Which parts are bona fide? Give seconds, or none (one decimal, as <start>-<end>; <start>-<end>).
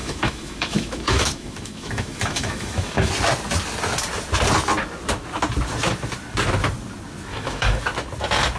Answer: 3.1-7.3; 7.8-8.6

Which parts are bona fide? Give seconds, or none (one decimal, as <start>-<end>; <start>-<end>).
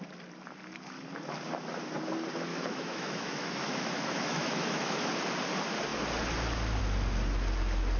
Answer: 0.0-2.5; 5.1-8.0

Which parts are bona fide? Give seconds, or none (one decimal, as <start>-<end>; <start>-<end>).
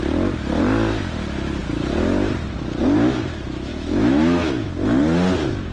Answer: 0.0-3.7; 4.7-5.7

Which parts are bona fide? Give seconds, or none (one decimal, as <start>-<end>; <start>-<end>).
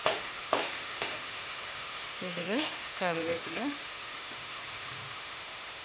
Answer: none